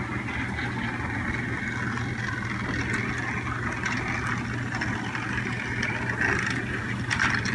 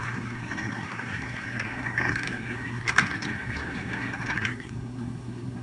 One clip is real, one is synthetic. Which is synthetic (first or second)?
second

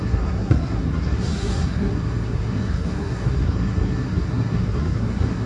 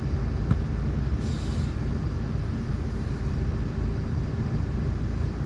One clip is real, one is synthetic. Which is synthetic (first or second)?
first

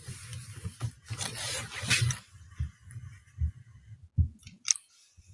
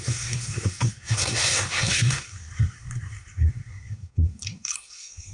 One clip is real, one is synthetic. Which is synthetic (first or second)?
second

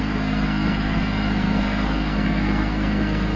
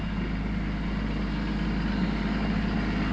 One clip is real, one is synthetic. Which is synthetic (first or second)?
first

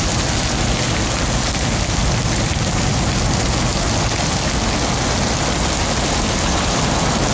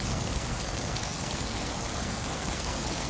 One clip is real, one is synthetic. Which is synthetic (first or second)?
second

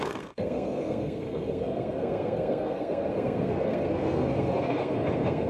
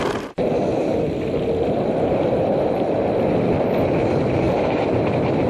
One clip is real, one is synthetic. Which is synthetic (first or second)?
first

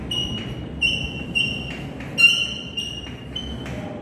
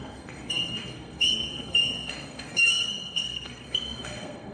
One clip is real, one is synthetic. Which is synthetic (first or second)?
second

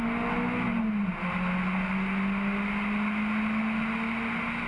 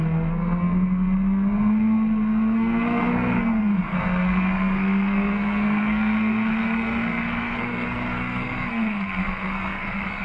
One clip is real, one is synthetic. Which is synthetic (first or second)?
second